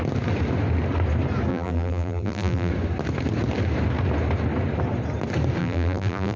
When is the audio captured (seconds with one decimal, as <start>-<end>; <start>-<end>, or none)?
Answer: 0.0-1.5; 2.7-5.6